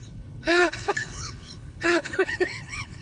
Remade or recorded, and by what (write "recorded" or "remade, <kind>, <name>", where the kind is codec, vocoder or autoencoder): remade, codec, HILCodec